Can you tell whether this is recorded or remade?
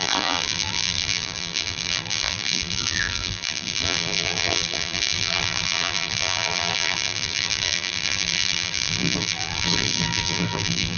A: remade